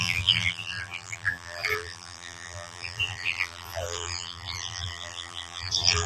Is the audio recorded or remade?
remade